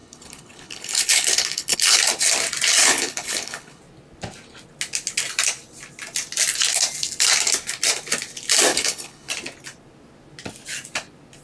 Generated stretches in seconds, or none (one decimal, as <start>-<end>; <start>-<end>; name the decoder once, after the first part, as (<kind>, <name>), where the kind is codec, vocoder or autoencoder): 0.0-2.0 (codec, HILCodec); 2.8-3.8; 8.7-9.3